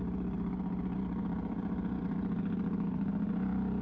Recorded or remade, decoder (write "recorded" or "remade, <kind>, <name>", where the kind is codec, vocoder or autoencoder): remade, vocoder, BigVGAN v2